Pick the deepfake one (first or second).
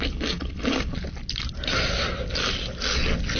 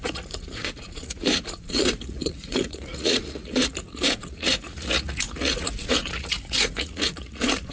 second